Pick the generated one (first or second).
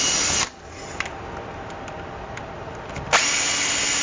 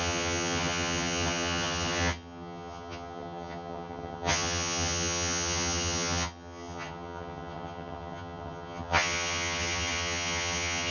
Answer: second